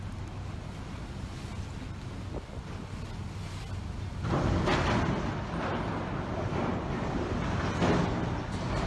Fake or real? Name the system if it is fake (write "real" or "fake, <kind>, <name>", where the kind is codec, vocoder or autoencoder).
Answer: real